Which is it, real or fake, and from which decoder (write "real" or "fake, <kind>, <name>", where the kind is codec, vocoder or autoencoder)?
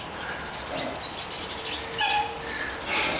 real